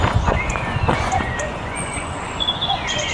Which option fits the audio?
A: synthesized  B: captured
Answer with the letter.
A